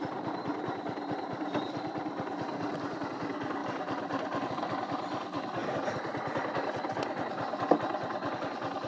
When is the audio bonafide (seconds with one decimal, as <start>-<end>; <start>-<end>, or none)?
0.0-3.6; 4.5-8.9